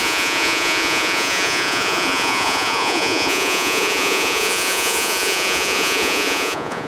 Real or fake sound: fake